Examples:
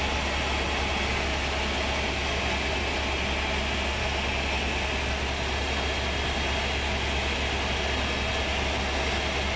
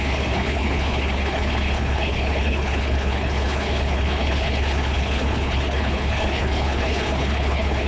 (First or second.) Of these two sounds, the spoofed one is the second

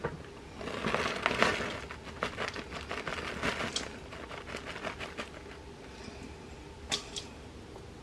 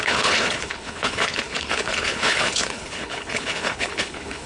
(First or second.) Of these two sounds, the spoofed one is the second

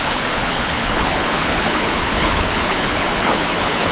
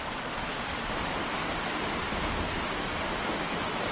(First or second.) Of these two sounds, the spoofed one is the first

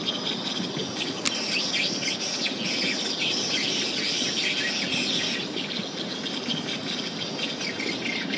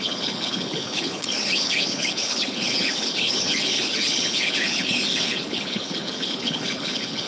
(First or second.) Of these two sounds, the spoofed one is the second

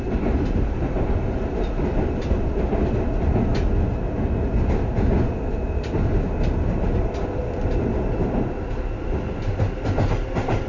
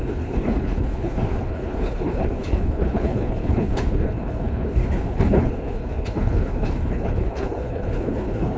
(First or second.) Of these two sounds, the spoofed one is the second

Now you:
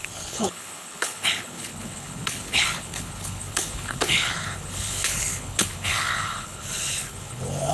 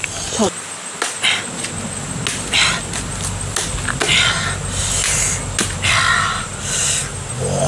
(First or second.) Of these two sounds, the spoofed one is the first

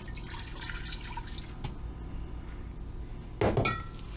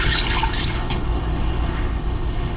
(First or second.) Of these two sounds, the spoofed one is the second